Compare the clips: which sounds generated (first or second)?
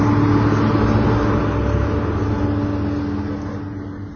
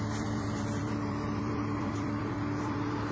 second